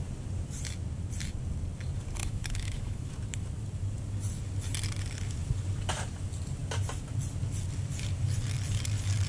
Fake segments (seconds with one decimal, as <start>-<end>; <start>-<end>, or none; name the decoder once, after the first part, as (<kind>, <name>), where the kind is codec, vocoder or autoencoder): 2.2-3.1 (autoencoder, DAC-VAE)

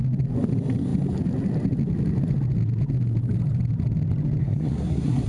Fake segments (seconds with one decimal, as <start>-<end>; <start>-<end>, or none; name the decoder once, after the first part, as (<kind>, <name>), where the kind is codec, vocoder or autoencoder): 4.4-5.3 (codec, SNAC)

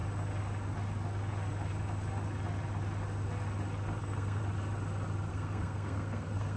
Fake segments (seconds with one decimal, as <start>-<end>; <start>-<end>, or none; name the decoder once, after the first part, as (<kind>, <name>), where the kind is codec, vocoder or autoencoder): 4.0-4.4 (codec, SNAC); 5.3-6.6

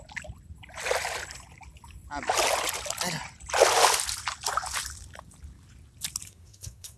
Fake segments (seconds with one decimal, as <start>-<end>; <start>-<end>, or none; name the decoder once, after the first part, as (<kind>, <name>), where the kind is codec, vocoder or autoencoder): 6.3-7.0 (codec, SNAC)